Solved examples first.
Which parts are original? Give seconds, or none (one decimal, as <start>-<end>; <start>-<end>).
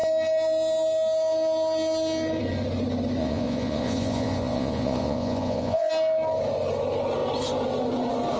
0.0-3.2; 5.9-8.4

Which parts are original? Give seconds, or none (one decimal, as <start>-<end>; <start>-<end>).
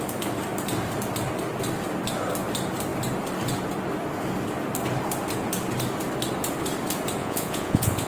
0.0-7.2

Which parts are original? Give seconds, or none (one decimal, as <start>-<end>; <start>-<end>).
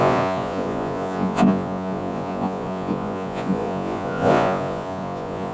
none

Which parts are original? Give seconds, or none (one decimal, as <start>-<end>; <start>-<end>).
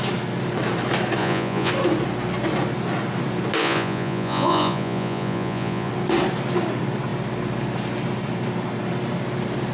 0.0-1.2; 1.7-3.6; 5.9-9.7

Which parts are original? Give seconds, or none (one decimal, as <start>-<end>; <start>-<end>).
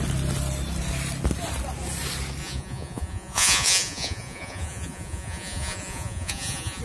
0.0-2.4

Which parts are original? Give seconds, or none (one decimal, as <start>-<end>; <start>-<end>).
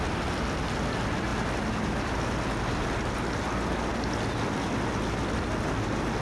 0.0-6.2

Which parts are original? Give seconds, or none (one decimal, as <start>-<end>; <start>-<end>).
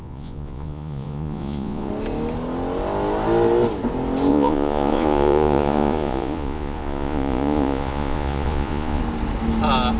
1.9-4.3; 9.0-10.0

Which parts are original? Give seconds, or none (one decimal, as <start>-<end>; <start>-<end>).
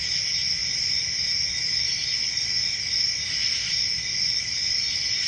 0.0-5.3